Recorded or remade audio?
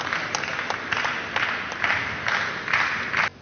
recorded